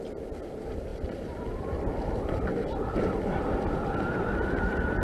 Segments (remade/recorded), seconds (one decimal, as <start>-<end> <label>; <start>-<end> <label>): 0.0-5.0 recorded